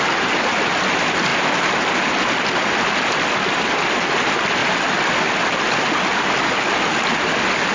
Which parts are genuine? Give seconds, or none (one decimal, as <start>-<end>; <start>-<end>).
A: 0.0-7.7